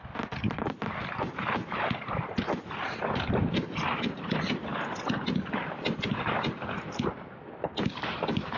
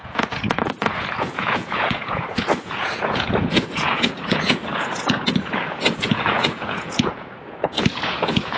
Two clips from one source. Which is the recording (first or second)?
first